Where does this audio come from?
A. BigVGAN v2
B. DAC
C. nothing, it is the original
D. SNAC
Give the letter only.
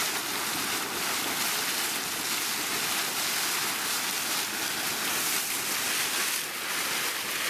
C